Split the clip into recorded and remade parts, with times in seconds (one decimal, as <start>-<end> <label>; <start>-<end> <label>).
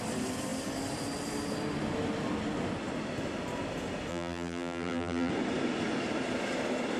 0.0-4.1 recorded; 4.1-5.3 remade; 5.3-7.0 recorded